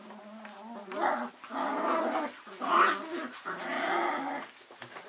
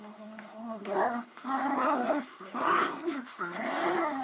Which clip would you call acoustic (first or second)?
first